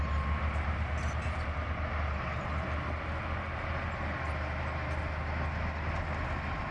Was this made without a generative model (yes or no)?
yes